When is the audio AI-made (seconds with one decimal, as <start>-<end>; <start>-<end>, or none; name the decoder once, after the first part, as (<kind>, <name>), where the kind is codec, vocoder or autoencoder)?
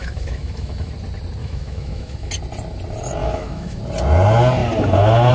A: 0.0-0.9 (autoencoder, DAC-VAE); 1.4-2.3; 3.2-3.8